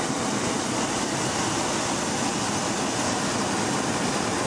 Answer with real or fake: fake